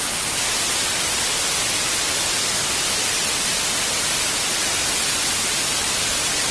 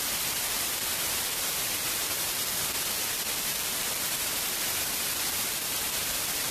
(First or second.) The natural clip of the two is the first